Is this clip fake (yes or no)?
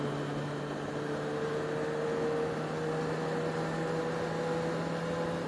no